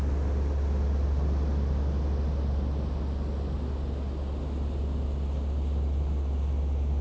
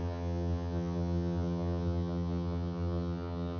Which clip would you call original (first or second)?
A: first